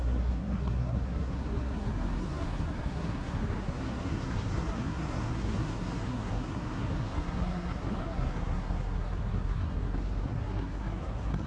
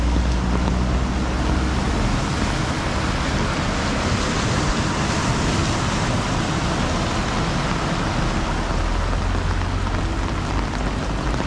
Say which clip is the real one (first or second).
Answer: second